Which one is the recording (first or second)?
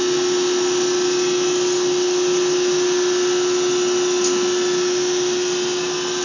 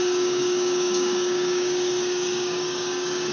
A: first